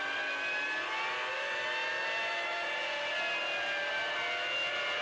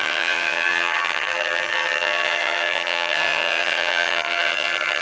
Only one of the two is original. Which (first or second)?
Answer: first